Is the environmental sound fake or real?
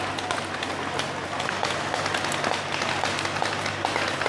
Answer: real